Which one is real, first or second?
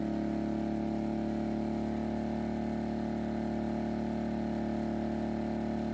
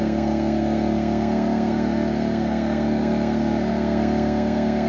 first